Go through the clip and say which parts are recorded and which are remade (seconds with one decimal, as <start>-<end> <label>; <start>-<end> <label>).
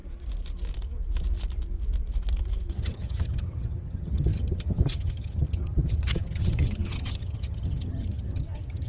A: 0.0-2.7 recorded; 2.7-8.9 remade